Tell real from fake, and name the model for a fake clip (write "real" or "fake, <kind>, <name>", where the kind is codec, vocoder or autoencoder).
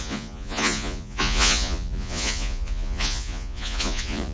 fake, vocoder, Vocos